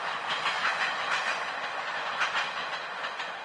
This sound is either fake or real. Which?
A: fake